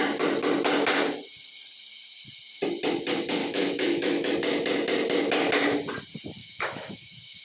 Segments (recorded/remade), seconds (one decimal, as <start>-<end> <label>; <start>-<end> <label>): 0.0-3.4 recorded; 3.4-4.3 remade; 4.3-6.4 recorded; 6.4-7.4 remade

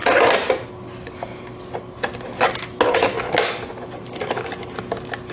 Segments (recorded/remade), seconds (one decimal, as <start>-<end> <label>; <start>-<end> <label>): 0.0-5.3 recorded

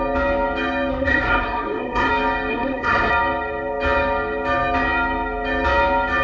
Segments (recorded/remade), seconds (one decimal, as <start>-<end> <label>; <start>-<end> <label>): 0.0-0.9 recorded; 0.9-2.1 remade; 2.1-2.5 recorded; 2.5-3.1 remade; 3.1-6.2 recorded

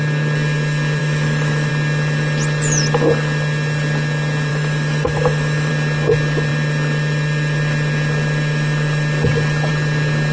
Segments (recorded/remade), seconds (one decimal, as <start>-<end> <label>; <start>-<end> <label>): 0.0-1.0 recorded; 1.0-1.7 remade; 1.7-4.5 recorded; 4.5-5.7 remade; 5.7-10.3 recorded

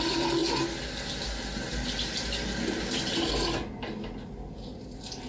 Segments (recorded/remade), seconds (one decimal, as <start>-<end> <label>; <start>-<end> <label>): 0.0-5.3 recorded